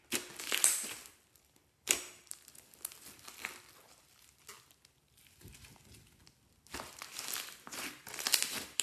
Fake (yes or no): no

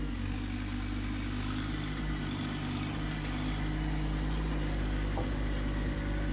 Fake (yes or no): no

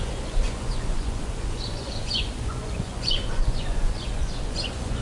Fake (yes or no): yes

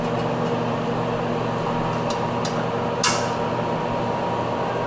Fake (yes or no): no